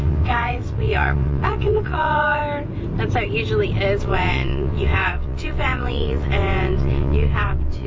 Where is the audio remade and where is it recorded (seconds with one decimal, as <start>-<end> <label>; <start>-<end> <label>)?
0.0-2.4 remade; 2.4-4.0 recorded; 4.0-7.9 remade